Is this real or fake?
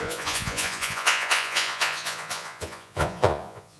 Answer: fake